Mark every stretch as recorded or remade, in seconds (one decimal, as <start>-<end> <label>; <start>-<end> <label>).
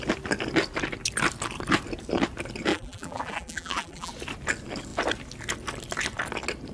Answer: 0.0-2.7 recorded; 2.7-4.1 remade; 4.1-6.7 recorded